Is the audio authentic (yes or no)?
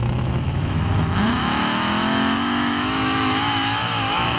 no